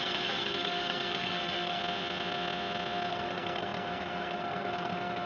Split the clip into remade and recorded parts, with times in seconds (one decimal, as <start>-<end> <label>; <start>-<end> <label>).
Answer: 0.0-1.8 remade; 1.8-3.1 recorded; 3.1-5.3 remade